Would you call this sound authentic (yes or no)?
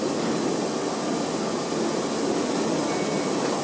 yes